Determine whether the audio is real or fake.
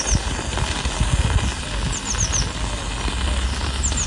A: real